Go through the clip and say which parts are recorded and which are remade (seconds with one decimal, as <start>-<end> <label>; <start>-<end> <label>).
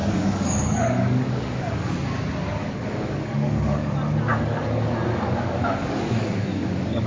0.0-1.9 remade; 1.9-2.5 recorded; 2.5-3.9 remade; 3.9-4.3 recorded; 4.3-7.1 remade